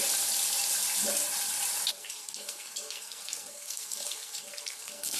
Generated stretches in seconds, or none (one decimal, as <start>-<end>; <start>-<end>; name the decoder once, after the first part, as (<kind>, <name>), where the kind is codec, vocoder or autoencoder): 1.9-5.2 (codec, SNAC)